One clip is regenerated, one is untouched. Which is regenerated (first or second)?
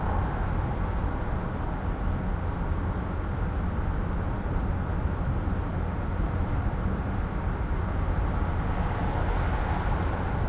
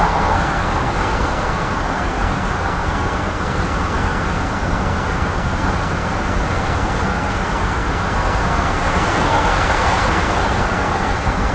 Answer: second